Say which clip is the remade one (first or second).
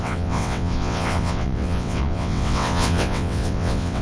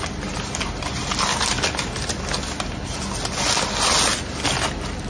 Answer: first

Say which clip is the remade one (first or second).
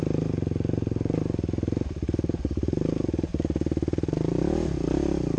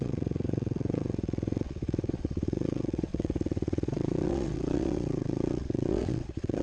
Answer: second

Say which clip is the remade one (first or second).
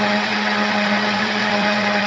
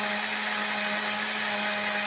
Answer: first